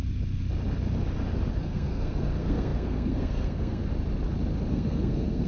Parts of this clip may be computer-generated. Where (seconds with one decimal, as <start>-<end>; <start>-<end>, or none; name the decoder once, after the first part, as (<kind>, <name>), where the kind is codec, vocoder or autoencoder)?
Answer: 1.5-3.8 (codec, SNAC); 4.7-5.5